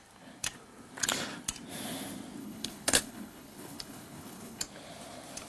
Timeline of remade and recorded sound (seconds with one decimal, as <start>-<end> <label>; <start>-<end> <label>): 0.0-2.4 recorded; 2.4-4.6 remade; 4.6-5.5 recorded